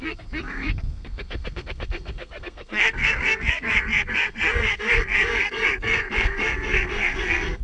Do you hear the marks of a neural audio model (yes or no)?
yes